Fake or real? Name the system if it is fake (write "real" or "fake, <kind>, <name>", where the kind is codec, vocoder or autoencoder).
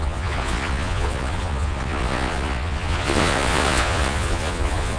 fake, vocoder, Vocos